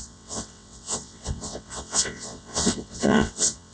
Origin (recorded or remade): remade